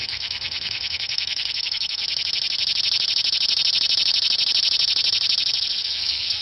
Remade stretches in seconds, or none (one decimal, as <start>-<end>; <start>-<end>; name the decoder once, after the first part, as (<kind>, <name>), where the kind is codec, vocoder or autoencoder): 0.0-2.0 (codec, SNAC); 5.8-6.4